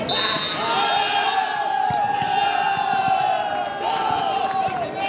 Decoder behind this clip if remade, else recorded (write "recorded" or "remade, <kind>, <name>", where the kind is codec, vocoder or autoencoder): recorded